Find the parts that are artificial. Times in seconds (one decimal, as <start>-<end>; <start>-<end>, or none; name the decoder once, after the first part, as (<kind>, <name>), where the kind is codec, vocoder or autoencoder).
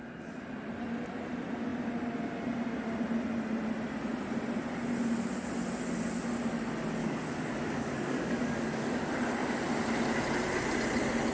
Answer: 7.0-9.1 (codec, DAC)